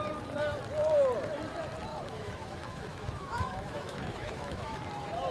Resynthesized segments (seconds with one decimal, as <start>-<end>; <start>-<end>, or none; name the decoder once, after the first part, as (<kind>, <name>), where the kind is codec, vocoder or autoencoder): 1.9-4.8 (autoencoder, DAC-VAE)